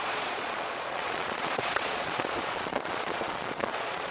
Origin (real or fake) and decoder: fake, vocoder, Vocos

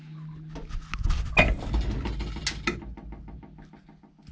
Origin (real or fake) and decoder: real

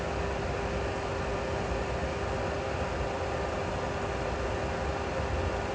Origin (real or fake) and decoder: real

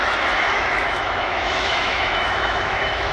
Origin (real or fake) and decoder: fake, autoencoder, DAC-VAE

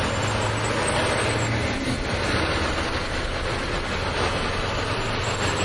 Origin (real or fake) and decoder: real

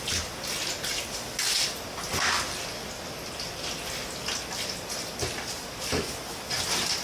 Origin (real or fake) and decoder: real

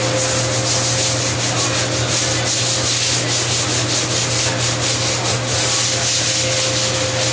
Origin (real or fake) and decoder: real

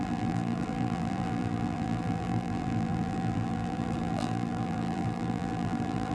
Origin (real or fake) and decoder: fake, vocoder, BigVGAN v2